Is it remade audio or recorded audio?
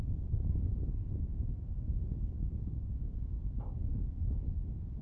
remade